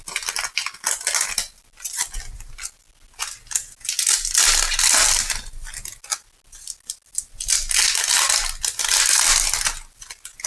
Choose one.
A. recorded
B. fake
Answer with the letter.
A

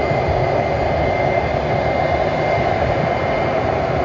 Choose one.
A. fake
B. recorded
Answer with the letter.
B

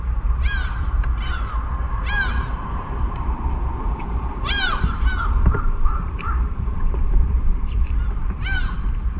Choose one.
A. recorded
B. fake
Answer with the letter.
B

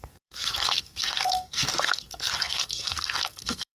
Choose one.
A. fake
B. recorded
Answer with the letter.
A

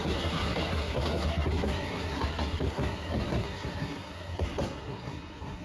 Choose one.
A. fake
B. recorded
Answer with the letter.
A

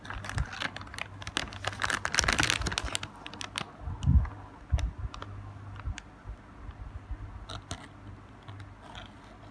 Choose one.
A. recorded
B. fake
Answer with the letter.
A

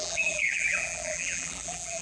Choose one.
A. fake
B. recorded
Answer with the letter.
A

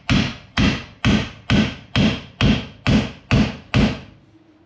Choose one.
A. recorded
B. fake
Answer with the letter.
A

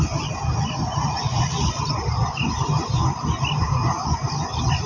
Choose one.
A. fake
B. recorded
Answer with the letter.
B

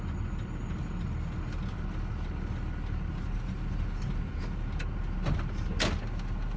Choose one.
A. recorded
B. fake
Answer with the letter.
A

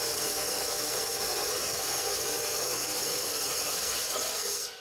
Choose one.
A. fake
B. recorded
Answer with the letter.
A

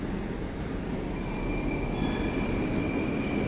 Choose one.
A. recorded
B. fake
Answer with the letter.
A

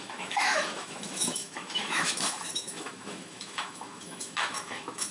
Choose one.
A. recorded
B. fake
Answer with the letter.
B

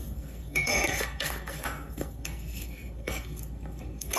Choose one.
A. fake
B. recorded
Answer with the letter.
A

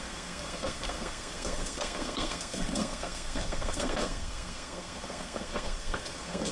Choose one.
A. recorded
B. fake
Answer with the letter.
B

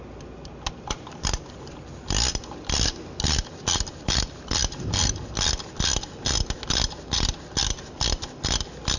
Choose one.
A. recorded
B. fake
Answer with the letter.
A